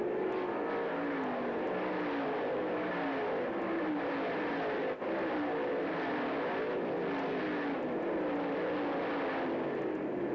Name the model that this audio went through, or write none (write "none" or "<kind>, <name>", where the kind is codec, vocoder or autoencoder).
none